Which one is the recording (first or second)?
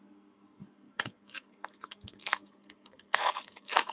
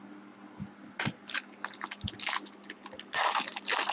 second